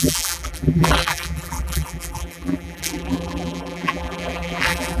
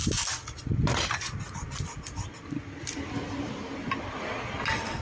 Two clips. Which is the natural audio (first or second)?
second